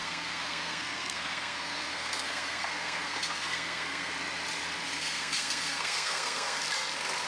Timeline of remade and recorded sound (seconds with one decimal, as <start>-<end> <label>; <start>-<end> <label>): 0.0-4.1 remade; 4.1-4.9 recorded; 4.9-6.6 remade; 6.6-7.3 recorded